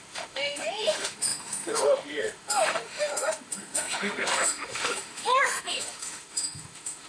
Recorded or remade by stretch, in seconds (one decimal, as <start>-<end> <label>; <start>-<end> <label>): 0.0-7.1 remade